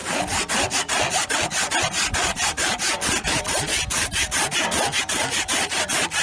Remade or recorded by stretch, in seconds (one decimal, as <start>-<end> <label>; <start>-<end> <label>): 0.0-2.3 recorded; 2.3-2.8 remade; 2.8-6.2 recorded